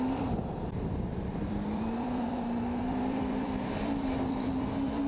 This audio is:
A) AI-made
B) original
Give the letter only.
A